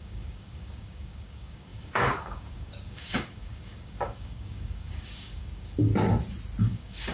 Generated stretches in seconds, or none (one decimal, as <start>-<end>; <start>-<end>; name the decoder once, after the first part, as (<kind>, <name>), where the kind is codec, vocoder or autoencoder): 0.0-5.9 (codec, DAC); 6.6-7.1